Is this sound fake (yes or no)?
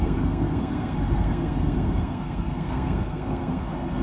yes